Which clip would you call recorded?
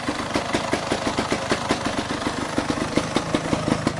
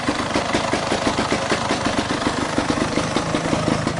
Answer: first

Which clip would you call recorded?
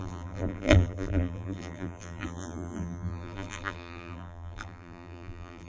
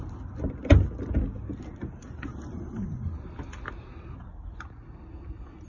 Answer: second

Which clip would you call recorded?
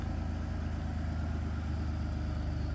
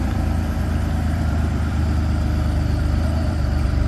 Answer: first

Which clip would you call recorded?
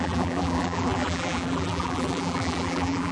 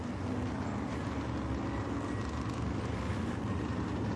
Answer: second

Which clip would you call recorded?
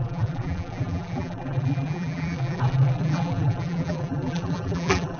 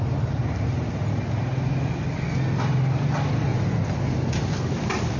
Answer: second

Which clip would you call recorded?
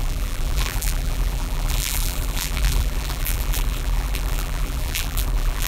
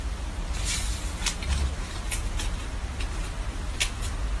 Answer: second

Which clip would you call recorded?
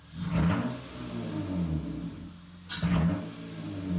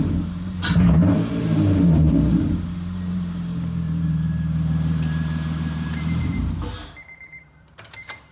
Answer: first